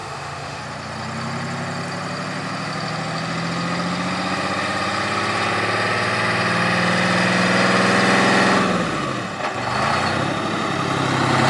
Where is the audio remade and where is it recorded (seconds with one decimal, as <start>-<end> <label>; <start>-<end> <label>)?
0.0-0.6 remade; 0.6-11.5 recorded